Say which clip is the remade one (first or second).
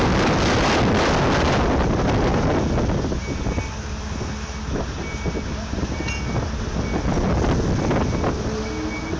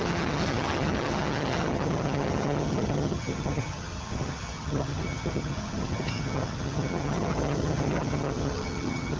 second